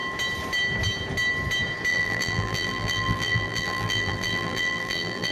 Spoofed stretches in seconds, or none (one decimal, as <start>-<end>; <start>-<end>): 1.9-5.3

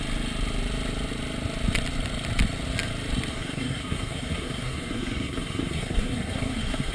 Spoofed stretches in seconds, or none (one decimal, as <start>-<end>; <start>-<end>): 3.3-6.9

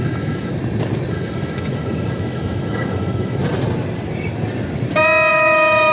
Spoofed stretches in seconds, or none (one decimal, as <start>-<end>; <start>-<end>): 0.0-0.5; 1.1-3.4; 5.3-5.9

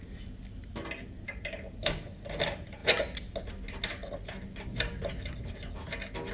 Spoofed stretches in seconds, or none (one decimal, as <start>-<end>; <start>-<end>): none

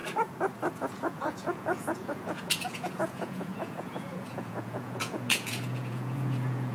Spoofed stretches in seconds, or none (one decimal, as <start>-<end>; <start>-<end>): 0.7-6.7

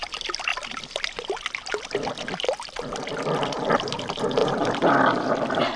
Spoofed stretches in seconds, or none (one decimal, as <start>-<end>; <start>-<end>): 0.5-4.0

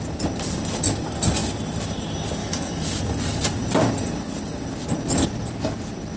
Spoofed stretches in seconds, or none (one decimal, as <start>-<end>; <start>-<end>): 2.4-3.0